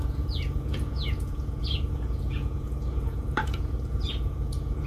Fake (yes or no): yes